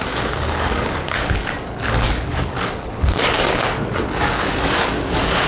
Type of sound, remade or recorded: remade